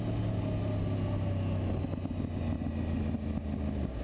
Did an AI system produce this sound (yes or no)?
no